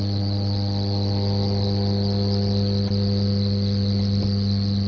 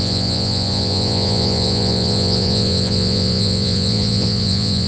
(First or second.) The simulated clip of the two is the second